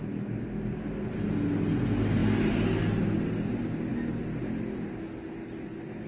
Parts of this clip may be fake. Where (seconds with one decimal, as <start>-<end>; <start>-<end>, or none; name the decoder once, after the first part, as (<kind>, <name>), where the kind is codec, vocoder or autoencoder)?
none